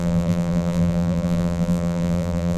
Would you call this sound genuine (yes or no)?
no